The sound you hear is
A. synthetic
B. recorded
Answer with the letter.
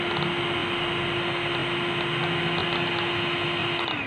B